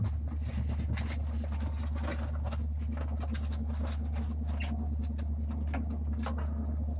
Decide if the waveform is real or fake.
real